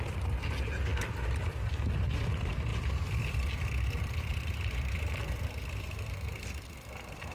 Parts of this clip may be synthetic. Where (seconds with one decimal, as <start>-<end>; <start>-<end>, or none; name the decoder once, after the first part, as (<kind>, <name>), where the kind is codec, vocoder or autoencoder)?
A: none